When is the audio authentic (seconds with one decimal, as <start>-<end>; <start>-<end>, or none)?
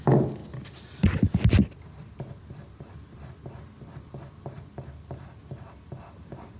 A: 0.0-6.6